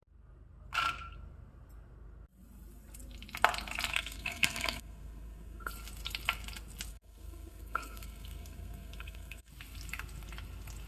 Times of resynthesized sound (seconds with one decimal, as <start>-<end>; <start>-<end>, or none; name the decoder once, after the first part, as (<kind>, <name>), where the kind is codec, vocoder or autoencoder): 3.9-5.7 (codec, SNAC); 6.9-9.5